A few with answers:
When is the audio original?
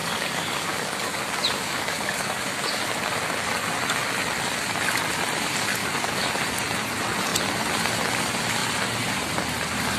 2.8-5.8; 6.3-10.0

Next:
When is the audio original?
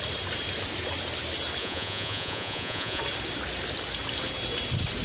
0.0-1.6; 3.0-5.0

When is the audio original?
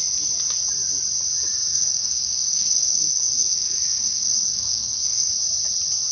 0.0-1.7; 5.3-6.1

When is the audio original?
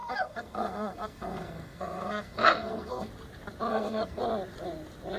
3.1-3.7; 4.2-5.2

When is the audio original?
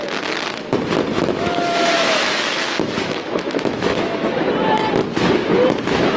0.0-1.1; 4.4-6.2